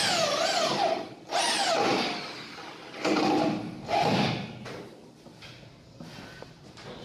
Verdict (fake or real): real